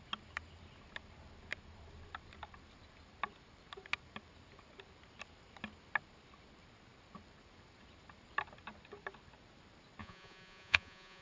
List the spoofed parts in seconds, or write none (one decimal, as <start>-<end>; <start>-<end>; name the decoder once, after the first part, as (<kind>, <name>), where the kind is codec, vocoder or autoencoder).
10.0-11.2 (vocoder, Vocos)